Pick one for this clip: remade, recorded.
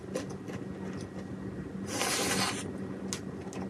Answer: recorded